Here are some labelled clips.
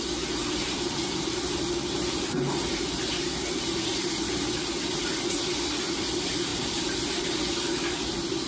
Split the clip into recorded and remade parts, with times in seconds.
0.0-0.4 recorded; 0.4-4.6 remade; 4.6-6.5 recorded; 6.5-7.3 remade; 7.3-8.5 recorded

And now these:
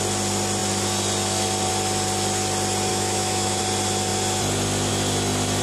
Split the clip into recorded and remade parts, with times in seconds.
0.0-2.9 recorded; 2.9-3.6 remade; 3.6-5.6 recorded